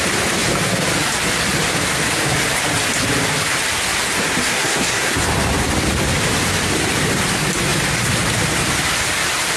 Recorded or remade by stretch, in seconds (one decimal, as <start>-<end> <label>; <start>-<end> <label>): 0.0-4.3 recorded; 4.3-5.1 remade; 5.1-9.6 recorded